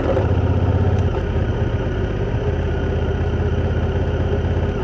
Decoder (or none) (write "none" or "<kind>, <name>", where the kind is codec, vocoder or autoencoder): none